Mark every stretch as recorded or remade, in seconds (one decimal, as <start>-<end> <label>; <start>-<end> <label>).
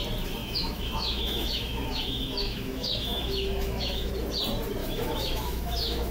0.0-0.4 recorded; 0.4-4.1 remade; 4.1-4.8 recorded; 4.8-6.1 remade